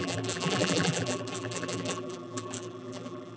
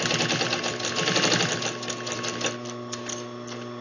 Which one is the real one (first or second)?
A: second